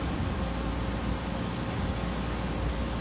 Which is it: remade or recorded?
recorded